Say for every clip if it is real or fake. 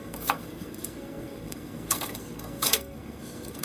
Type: fake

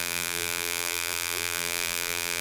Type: fake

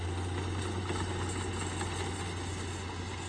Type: real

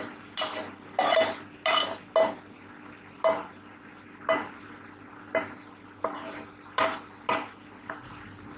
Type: real